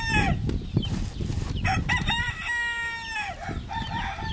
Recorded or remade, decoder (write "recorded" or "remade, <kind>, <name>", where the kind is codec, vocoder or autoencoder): recorded